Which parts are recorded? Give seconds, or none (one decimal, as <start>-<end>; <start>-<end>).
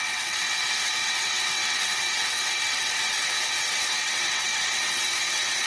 none